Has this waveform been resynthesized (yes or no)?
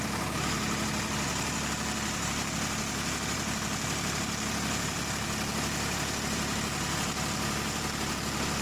no